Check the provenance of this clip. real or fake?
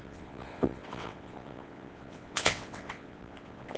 fake